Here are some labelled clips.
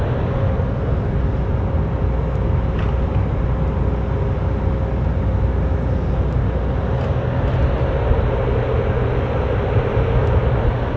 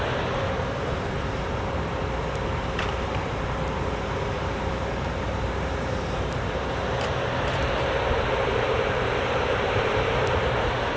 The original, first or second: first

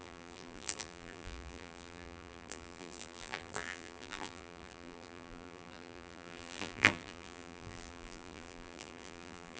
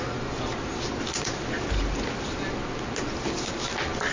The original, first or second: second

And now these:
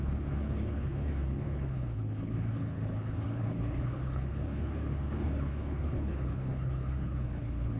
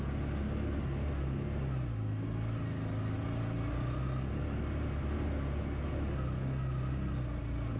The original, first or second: second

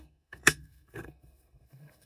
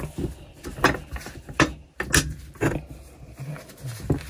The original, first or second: second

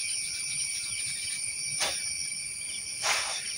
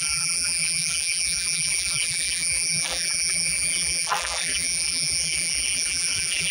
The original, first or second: first